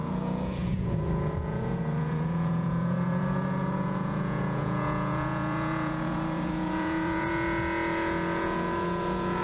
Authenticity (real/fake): fake